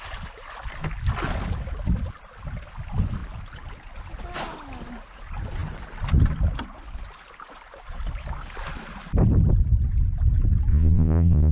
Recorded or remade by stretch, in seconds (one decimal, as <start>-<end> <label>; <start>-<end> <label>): 0.0-10.7 recorded; 10.7-11.5 remade